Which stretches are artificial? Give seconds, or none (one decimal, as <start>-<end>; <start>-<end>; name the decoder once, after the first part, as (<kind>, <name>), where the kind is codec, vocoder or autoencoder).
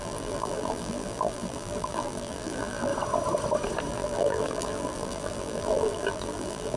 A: 0.0-2.9 (vocoder, BigVGAN v2); 3.9-6.8